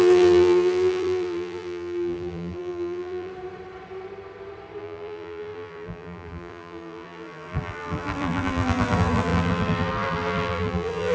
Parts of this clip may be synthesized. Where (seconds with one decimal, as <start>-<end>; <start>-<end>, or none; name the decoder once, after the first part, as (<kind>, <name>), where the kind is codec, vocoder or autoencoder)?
0.0-3.3 (vocoder, BigVGAN v2); 4.8-11.1